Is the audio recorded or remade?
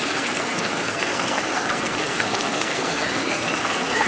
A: remade